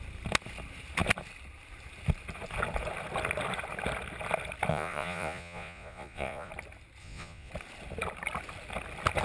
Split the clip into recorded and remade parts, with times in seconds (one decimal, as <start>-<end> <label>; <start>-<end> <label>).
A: 0.0-4.7 recorded; 4.7-6.5 remade; 6.5-7.0 recorded; 7.0-7.5 remade; 7.5-9.2 recorded